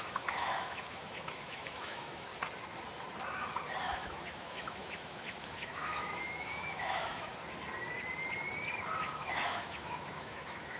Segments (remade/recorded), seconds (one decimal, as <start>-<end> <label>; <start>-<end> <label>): 0.0-2.3 remade; 2.3-3.8 recorded; 3.8-7.3 remade; 7.3-9.0 recorded; 9.0-10.8 remade